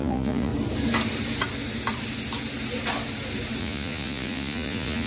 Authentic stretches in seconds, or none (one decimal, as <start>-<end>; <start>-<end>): 0.5-3.6